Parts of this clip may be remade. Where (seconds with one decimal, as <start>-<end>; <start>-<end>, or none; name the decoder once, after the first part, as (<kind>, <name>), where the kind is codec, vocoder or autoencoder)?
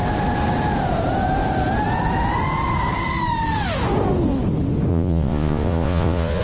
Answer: 4.9-6.4 (vocoder, Vocos)